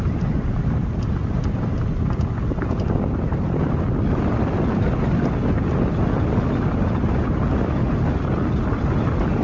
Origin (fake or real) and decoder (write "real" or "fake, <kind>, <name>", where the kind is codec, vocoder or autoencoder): real